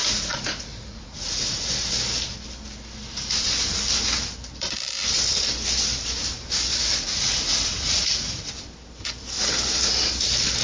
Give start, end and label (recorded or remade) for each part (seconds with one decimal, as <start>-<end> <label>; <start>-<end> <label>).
0.0-1.7 remade; 1.7-6.7 recorded; 6.7-8.5 remade; 8.5-10.6 recorded

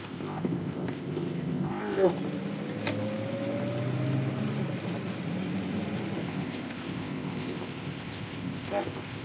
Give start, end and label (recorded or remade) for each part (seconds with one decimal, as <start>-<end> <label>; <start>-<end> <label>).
0.0-2.1 remade; 2.1-6.2 recorded; 6.2-9.2 remade

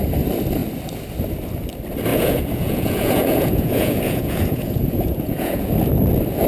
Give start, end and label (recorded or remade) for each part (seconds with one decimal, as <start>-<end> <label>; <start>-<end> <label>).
0.0-2.1 recorded; 2.1-5.7 remade; 5.7-6.5 recorded